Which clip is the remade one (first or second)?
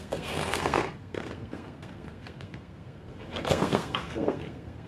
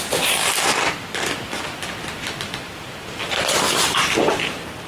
first